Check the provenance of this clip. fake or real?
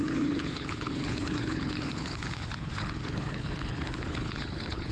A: fake